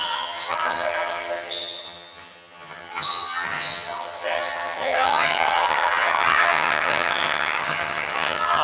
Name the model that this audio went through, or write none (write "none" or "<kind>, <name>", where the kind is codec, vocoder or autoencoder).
vocoder, HiFi-GAN